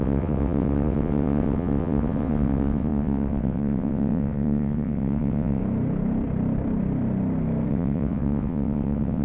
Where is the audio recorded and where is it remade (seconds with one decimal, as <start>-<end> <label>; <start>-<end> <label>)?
0.0-5.6 remade; 5.6-7.7 recorded; 7.7-9.2 remade